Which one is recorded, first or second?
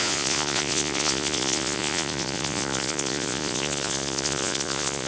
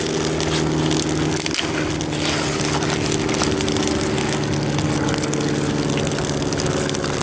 second